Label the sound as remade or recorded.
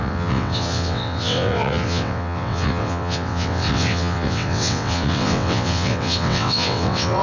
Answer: remade